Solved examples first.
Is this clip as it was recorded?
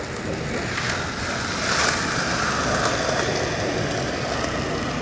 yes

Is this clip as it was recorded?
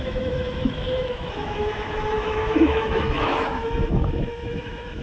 no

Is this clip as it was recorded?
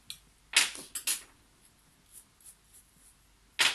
yes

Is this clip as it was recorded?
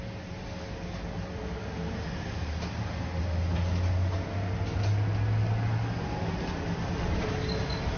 yes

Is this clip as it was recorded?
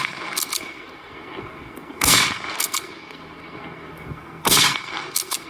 no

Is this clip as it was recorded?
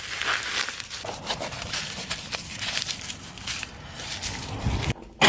no